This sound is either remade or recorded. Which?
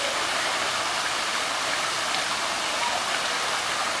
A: remade